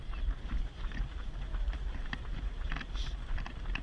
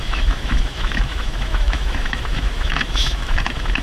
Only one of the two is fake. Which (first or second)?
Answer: second